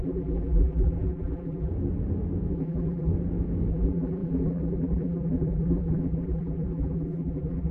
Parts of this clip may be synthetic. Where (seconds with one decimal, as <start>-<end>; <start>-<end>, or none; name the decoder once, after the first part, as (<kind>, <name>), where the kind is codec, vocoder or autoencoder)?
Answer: 0.0-1.7 (vocoder, BigVGAN v2); 2.5-3.1; 3.7-7.7